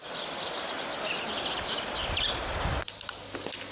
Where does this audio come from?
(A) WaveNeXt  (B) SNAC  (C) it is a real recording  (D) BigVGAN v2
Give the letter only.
C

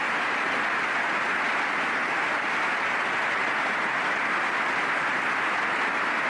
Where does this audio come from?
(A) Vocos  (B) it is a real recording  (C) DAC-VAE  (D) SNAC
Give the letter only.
B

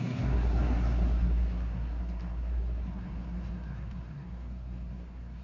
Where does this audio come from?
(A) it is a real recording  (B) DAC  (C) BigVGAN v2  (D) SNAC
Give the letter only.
D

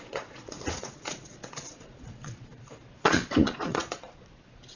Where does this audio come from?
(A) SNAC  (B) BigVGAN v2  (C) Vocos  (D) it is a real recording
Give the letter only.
C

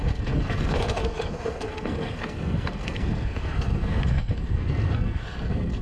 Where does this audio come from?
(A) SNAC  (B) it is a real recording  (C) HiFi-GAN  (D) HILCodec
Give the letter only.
A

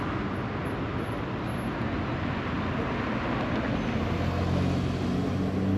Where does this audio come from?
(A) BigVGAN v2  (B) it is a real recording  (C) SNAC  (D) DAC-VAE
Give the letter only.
B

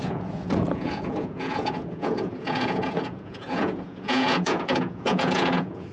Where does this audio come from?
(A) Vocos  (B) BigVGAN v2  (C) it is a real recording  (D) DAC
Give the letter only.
A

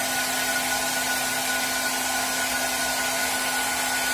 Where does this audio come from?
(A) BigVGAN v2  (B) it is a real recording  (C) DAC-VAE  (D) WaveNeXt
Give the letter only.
B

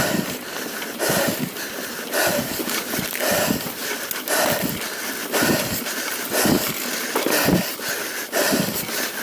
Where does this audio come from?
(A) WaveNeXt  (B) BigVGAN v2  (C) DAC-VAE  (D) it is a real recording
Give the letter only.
D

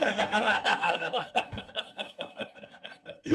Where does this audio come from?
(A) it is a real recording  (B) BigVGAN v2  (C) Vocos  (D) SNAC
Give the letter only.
D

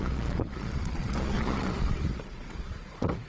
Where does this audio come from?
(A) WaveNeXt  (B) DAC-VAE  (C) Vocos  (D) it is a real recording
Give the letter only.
C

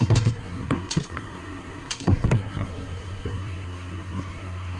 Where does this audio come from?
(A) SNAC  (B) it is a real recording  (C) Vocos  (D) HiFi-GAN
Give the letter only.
A